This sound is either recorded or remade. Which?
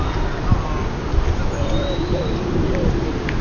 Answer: recorded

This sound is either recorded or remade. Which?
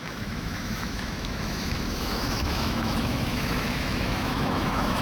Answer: remade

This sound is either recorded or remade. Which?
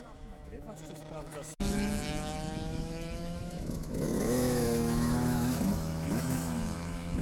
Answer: remade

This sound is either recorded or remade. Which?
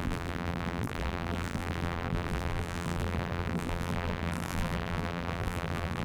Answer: remade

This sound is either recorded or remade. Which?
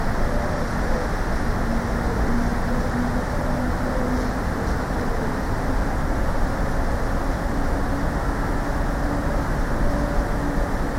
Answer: recorded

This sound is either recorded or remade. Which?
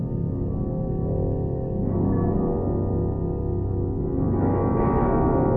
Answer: recorded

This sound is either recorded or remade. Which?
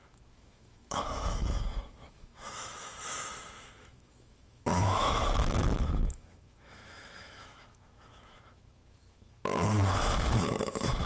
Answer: remade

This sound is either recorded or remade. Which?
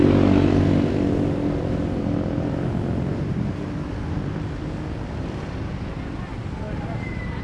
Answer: recorded